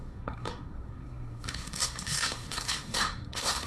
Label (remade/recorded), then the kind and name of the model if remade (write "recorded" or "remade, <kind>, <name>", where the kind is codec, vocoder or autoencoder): remade, codec, SNAC